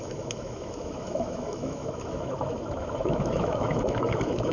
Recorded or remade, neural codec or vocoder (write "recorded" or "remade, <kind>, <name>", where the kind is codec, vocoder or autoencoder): remade, autoencoder, DAC-VAE